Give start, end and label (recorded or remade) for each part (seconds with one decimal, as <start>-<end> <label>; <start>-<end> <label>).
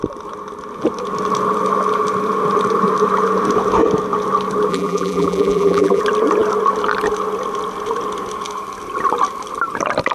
0.0-4.7 recorded; 4.7-6.0 remade; 6.0-10.1 recorded